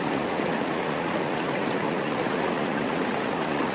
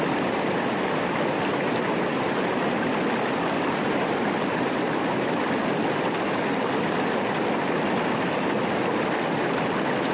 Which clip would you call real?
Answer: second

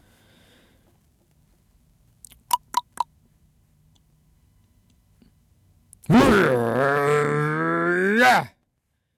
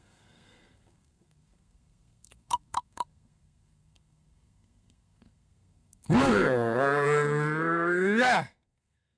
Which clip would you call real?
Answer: first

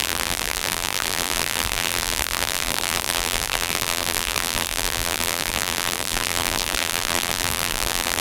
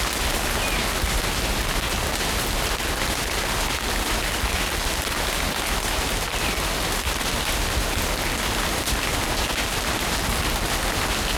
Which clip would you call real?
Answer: second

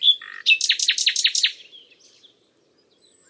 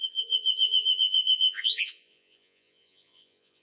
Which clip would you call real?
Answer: first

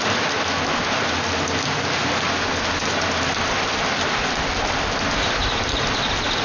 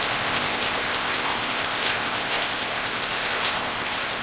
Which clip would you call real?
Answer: first